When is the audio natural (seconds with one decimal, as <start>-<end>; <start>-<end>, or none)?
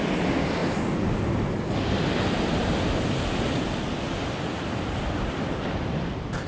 0.0-6.5